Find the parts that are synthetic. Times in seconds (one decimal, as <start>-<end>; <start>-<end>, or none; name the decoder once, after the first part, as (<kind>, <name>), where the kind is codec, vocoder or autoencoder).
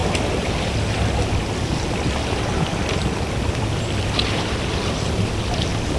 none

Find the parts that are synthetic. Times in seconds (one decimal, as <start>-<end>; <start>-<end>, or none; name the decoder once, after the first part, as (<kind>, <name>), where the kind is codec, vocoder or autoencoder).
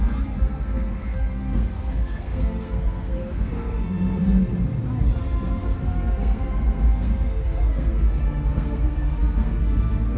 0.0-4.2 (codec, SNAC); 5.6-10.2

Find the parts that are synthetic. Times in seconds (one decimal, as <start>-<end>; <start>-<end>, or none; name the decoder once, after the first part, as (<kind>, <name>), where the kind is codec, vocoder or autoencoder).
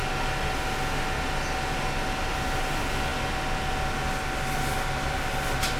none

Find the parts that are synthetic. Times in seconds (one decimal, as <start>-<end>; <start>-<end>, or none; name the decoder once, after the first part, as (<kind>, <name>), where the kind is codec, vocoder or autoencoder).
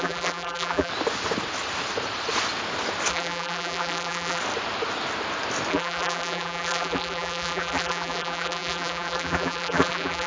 0.0-0.9 (vocoder, BigVGAN v2); 3.1-4.4; 5.7-10.3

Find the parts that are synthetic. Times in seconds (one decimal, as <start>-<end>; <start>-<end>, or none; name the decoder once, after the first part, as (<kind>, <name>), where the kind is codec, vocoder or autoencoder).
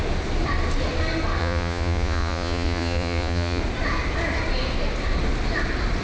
1.4-3.6 (vocoder, Vocos)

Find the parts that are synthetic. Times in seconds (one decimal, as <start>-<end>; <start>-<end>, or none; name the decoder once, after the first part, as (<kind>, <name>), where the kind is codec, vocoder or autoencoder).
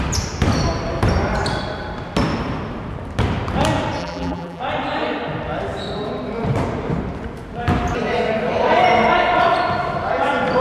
4.0-4.6 (vocoder, BigVGAN v2)